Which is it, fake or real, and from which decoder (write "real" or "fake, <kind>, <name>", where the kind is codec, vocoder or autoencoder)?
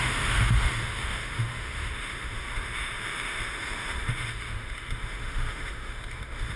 fake, autoencoder, DAC-VAE